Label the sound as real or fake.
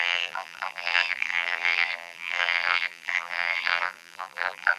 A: fake